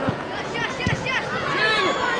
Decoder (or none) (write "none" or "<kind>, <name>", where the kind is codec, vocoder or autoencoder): vocoder, Vocos